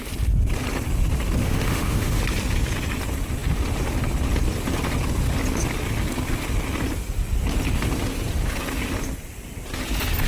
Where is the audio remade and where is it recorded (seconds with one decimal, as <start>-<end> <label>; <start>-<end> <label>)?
0.0-1.4 recorded; 1.4-2.2 remade; 2.2-10.3 recorded